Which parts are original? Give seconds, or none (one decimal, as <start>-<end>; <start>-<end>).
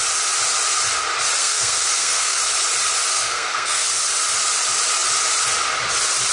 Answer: 0.0-1.4; 2.4-3.1; 3.9-6.3